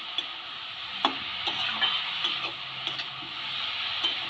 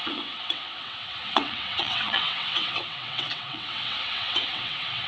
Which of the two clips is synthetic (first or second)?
second